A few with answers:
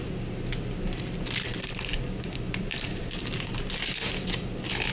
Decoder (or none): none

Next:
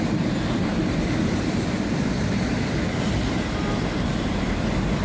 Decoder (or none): none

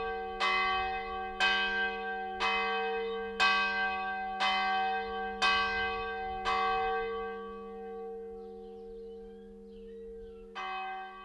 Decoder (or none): none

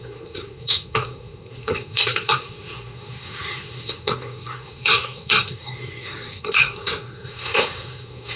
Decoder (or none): codec, SNAC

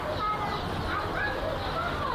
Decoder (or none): none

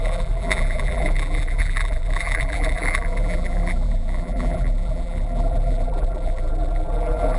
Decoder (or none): vocoder, BigVGAN v2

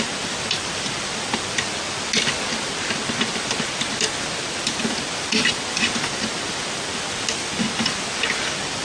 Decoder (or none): none